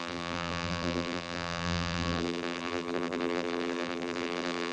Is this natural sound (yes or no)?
no